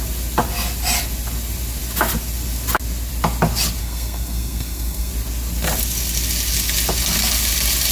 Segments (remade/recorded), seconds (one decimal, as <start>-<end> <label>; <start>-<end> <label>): 0.0-3.8 recorded; 3.8-5.1 remade; 5.1-7.9 recorded